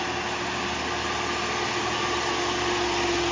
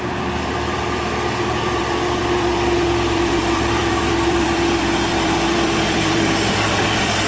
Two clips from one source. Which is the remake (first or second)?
second